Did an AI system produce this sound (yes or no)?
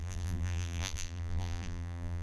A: yes